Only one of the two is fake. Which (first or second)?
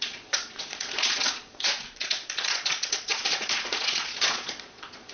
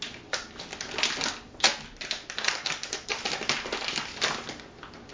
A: first